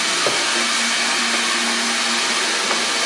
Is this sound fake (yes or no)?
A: no